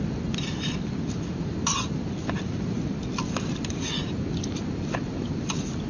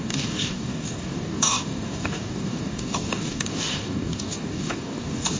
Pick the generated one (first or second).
second